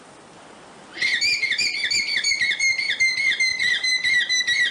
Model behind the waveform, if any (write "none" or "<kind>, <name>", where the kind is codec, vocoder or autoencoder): vocoder, BigVGAN v2